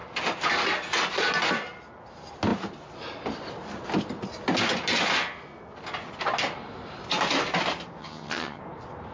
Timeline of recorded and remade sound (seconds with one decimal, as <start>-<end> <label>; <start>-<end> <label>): 0.0-8.0 recorded; 8.0-8.6 remade; 8.6-9.1 recorded